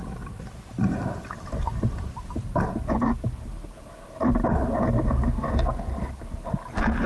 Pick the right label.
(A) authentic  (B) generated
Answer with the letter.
A